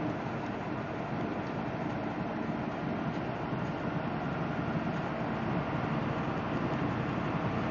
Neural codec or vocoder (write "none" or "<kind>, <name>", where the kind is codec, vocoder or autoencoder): none